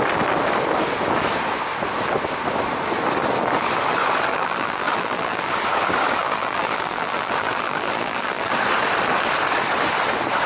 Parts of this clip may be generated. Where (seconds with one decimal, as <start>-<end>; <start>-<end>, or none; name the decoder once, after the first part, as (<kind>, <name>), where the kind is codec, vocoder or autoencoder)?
4.3-5.5 (vocoder, BigVGAN v2); 6.2-8.5